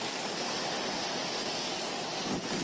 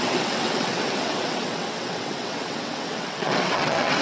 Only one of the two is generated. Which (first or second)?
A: second